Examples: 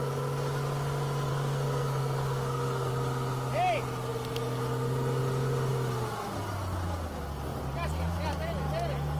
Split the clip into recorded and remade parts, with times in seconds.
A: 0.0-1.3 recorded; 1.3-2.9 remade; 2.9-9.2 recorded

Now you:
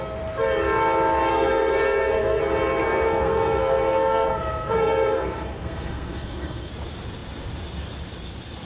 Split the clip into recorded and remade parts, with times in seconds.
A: 0.0-1.3 recorded; 1.3-2.4 remade; 2.4-2.8 recorded; 2.8-6.7 remade; 6.7-8.7 recorded

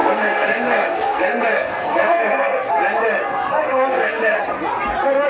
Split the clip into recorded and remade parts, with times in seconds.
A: 0.0-2.7 remade; 2.7-3.2 recorded; 3.2-4.4 remade; 4.4-5.3 recorded

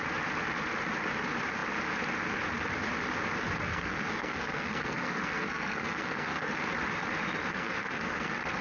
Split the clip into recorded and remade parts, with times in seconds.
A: 0.0-3.7 recorded; 3.7-6.7 remade; 6.7-7.5 recorded; 7.5-8.6 remade